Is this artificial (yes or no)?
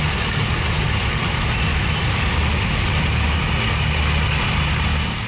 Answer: no